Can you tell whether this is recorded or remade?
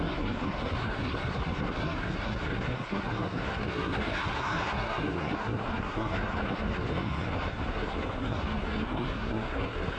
remade